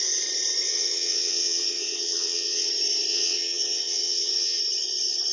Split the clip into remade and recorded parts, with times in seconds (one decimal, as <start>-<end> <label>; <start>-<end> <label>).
0.0-0.7 recorded; 0.7-2.7 remade; 2.7-3.1 recorded; 3.1-4.6 remade; 4.6-5.3 recorded